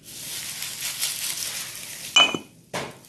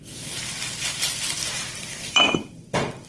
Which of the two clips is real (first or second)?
first